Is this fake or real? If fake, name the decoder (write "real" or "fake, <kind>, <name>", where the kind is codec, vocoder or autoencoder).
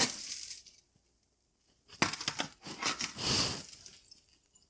real